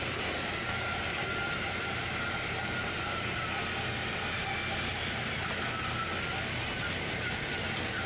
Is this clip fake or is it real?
real